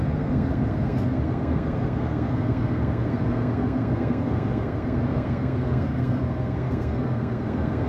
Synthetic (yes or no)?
yes